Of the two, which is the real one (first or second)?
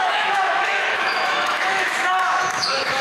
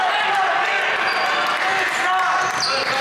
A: second